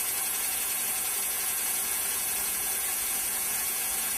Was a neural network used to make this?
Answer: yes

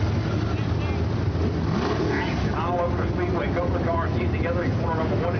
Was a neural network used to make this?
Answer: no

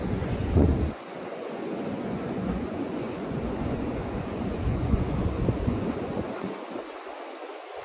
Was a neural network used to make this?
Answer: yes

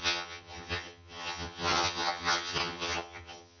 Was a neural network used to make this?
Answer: yes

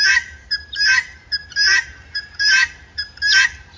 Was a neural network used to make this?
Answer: no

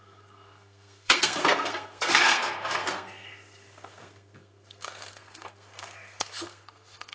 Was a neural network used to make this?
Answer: yes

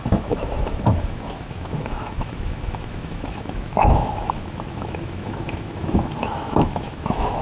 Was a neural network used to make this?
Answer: yes